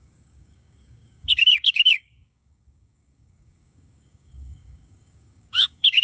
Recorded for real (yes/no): no